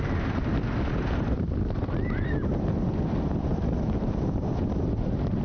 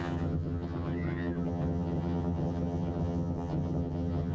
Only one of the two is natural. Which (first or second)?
first